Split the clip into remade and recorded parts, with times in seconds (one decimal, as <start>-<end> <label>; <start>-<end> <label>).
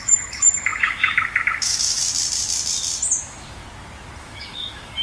0.0-2.0 remade; 2.0-3.2 recorded; 3.2-3.6 remade; 3.6-4.2 recorded; 4.2-5.0 remade